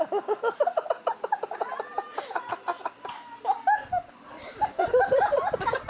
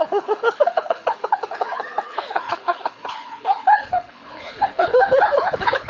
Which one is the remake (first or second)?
second